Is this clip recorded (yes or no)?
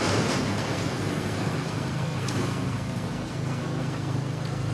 no